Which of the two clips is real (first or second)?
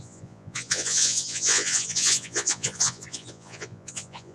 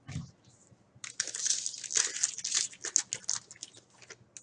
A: second